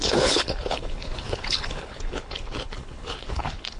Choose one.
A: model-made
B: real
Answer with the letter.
A